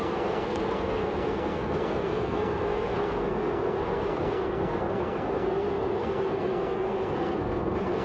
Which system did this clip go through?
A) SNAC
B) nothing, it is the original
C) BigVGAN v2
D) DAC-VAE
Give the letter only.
A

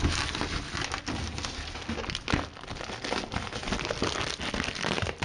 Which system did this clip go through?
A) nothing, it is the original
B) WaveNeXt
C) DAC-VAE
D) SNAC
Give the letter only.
A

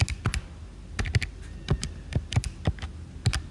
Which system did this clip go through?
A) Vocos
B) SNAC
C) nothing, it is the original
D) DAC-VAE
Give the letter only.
C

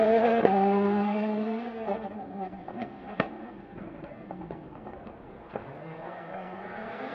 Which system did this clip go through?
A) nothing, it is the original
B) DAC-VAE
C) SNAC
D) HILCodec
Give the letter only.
C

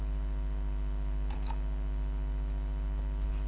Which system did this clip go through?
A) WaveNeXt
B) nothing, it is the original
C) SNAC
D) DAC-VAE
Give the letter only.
B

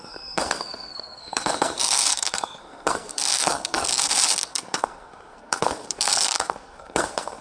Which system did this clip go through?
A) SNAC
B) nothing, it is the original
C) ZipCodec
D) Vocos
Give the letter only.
A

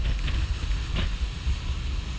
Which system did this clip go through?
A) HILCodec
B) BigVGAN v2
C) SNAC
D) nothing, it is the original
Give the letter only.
D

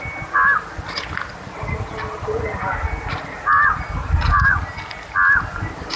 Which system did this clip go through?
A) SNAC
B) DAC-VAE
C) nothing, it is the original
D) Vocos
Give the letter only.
C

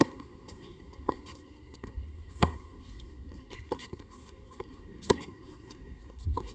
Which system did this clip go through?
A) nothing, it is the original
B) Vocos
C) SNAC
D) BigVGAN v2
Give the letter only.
C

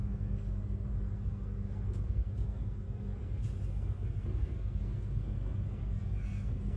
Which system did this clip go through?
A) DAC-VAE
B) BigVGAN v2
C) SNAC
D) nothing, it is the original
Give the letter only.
C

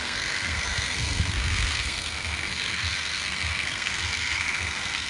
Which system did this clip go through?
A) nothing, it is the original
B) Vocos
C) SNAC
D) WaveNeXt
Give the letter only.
C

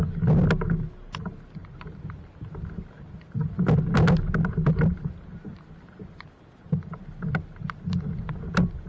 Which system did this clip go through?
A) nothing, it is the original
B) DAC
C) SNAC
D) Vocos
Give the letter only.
A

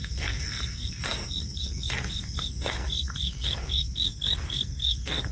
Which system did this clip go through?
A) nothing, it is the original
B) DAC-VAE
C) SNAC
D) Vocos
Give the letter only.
C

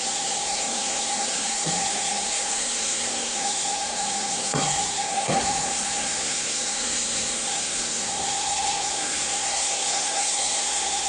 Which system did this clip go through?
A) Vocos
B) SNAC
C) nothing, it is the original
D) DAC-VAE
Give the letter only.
B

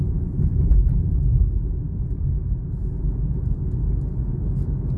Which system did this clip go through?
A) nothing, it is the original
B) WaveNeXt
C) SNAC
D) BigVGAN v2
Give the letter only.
A